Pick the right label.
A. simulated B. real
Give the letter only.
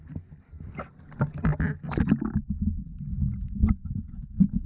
B